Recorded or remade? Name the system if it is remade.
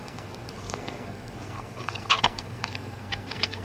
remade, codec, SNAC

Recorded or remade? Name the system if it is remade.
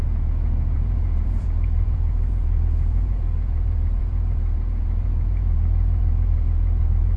remade, vocoder, Vocos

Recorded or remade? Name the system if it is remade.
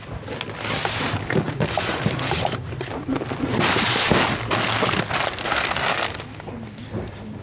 recorded